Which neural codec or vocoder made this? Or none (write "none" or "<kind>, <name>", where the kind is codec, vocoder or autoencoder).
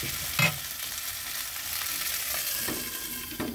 none